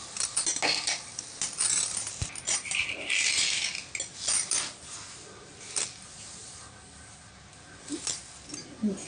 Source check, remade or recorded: recorded